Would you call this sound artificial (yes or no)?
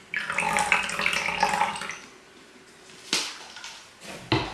no